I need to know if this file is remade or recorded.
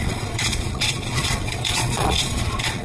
remade